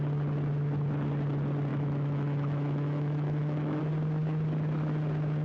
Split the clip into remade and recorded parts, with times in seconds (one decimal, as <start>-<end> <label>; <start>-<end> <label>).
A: 0.0-1.7 recorded; 1.7-3.8 remade; 3.8-5.4 recorded